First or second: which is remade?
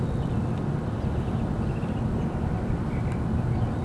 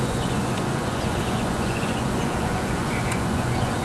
second